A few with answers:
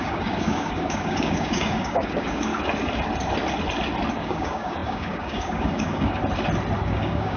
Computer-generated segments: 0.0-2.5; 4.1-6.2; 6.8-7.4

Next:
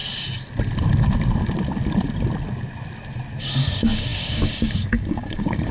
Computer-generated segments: 3.4-5.7